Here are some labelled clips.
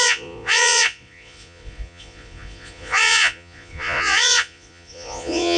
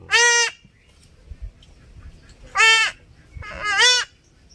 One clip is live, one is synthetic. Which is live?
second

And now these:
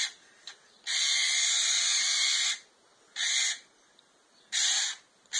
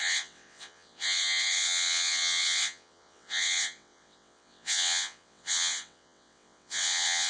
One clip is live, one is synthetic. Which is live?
first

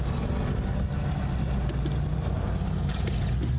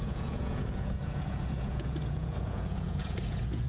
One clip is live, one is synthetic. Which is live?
first